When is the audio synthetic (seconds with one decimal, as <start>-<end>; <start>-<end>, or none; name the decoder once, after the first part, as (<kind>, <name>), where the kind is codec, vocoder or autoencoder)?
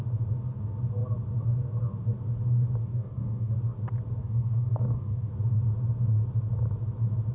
2.8-3.5 (codec, DAC); 4.2-5.3